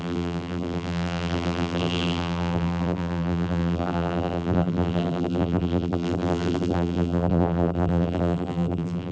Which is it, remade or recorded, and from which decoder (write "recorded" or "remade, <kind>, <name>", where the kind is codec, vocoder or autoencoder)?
remade, vocoder, BigVGAN v2